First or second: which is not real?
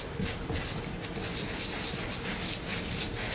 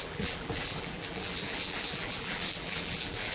second